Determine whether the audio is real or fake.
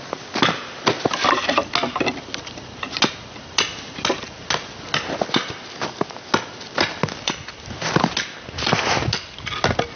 real